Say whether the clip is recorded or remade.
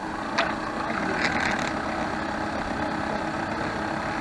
recorded